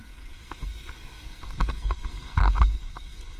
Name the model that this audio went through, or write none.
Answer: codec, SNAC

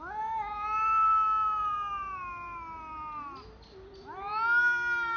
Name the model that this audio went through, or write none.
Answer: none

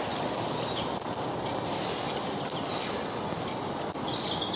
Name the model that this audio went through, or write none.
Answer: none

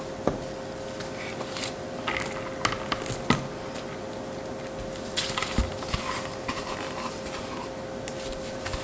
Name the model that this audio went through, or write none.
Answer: none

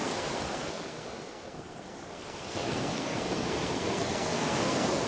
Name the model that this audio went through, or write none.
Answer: codec, SNAC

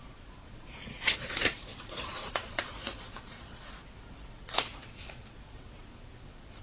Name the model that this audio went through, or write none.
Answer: vocoder, Vocos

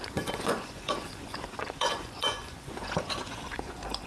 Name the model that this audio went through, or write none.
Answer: vocoder, Vocos